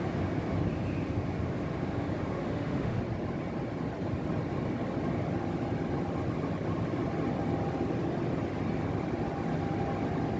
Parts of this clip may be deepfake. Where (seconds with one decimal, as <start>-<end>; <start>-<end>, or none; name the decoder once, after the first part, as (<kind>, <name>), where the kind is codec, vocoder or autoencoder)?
2.3-3.0 (autoencoder, DAC-VAE)